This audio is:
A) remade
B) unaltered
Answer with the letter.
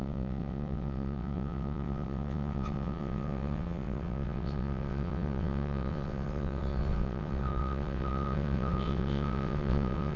A